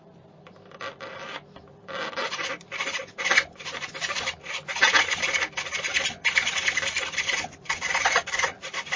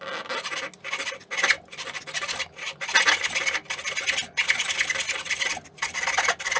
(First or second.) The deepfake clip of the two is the first